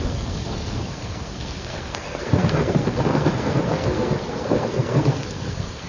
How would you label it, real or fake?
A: fake